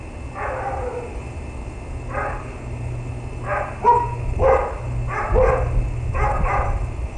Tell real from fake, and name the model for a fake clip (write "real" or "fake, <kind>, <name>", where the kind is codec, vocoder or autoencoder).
real